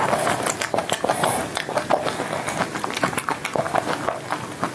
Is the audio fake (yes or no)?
no